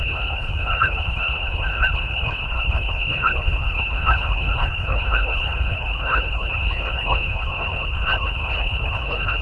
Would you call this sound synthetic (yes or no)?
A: yes